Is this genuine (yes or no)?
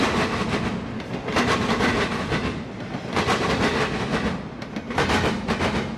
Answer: yes